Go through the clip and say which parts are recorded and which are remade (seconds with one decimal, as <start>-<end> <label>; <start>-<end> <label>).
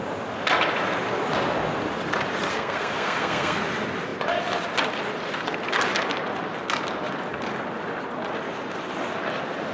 0.0-2.5 recorded; 2.5-3.6 remade; 3.6-9.7 recorded